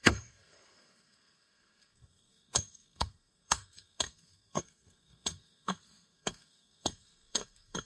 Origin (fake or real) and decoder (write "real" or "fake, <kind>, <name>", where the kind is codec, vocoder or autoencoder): fake, codec, SNAC